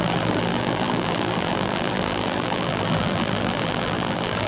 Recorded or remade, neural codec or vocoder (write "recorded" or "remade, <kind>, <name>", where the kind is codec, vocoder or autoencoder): remade, vocoder, BigVGAN v2